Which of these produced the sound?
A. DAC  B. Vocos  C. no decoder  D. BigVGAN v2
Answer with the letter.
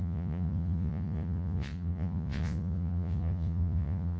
B